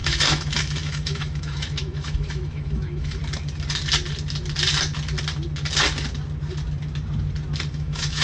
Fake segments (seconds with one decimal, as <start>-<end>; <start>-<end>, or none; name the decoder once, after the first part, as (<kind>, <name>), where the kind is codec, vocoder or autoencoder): 0.0-3.2 (autoencoder, DAC-VAE); 7.7-8.2